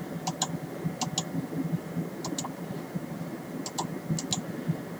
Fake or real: real